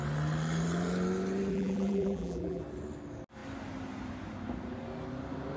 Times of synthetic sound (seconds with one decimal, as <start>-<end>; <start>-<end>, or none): 1.5-2.6